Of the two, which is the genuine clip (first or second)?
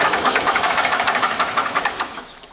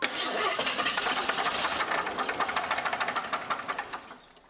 second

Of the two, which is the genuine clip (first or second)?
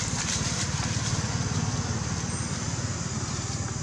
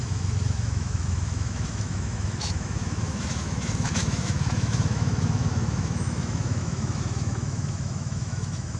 first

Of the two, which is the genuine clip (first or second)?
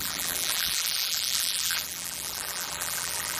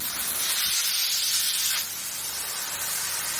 second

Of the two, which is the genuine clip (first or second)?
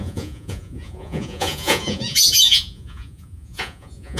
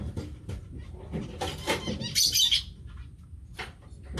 second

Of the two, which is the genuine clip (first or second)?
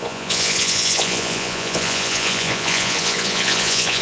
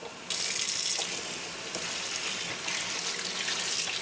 second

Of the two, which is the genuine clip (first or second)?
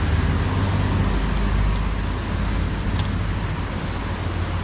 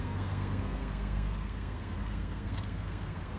first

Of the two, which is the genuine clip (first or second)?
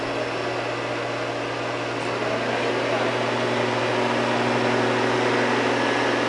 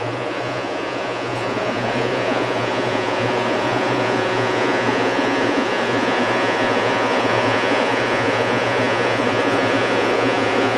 first